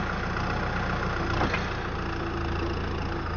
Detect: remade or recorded recorded